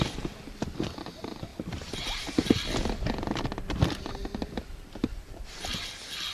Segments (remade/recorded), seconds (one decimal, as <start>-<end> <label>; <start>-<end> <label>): 0.0-1.5 recorded; 1.5-3.4 remade; 3.4-6.3 recorded